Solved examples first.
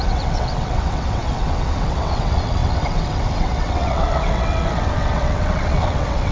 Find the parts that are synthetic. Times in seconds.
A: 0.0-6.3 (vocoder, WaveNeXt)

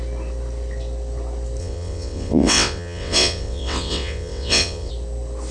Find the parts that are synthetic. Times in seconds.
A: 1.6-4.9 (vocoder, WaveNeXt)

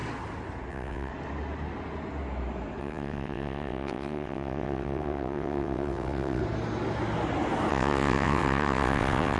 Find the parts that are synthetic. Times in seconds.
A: 0.7-1.1 (vocoder, WaveNeXt); 2.8-6.4; 7.7-9.4